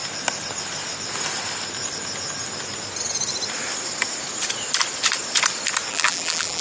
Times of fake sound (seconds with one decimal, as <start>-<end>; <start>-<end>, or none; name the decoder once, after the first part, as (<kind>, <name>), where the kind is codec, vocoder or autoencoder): 5.9-6.6 (vocoder, BigVGAN v2)